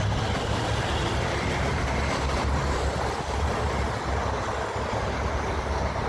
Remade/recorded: recorded